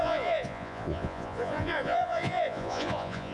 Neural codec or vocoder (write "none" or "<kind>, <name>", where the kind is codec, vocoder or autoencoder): vocoder, Vocos